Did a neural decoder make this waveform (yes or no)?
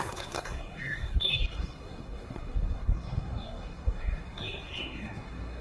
yes